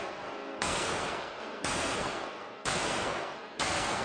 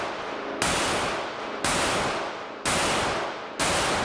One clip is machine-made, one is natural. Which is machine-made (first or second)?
first